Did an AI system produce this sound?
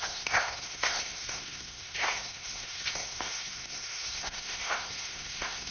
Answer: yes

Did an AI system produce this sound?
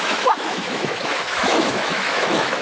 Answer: yes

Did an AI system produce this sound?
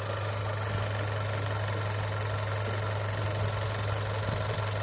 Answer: no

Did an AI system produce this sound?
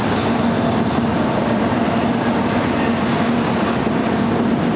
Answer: no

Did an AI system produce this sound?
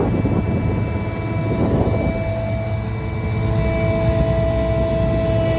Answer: no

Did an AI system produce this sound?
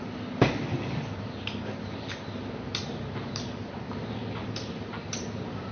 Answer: no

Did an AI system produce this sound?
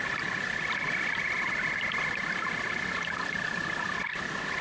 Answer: no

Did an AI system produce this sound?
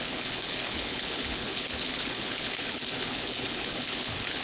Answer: yes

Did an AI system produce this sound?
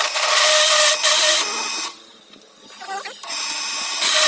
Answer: no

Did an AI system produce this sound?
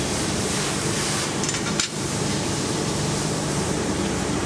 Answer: yes